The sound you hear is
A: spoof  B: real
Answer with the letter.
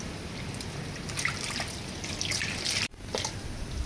B